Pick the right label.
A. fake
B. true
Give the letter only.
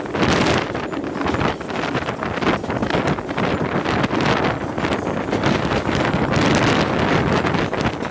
B